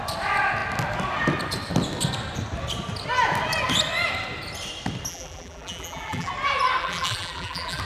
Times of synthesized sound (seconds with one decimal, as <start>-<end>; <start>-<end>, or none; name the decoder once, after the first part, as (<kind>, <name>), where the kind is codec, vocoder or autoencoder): 5.1-6.3 (vocoder, BigVGAN v2); 6.8-7.8